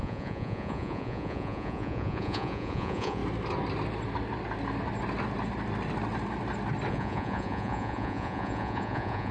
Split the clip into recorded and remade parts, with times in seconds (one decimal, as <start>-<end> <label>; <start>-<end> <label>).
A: 0.0-3.2 remade; 3.2-6.9 recorded; 6.9-9.3 remade